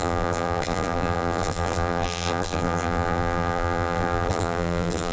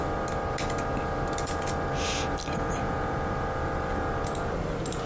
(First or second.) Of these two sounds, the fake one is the first